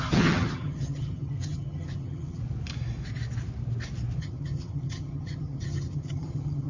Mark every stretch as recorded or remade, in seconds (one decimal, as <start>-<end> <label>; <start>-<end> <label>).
0.0-2.4 remade; 2.4-4.2 recorded; 4.2-6.7 remade